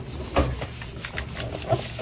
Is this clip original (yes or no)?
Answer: yes